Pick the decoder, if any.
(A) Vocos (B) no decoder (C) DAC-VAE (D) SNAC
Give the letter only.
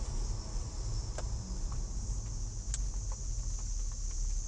B